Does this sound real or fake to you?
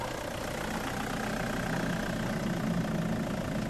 real